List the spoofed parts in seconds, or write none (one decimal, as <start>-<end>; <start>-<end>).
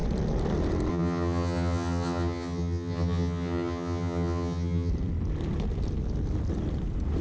0.9-4.9